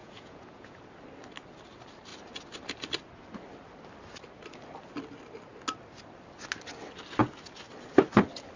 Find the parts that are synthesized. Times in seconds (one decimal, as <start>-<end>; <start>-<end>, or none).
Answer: 0.0-0.8